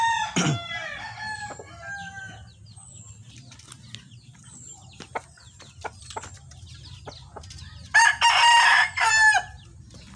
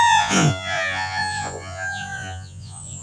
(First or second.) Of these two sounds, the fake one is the second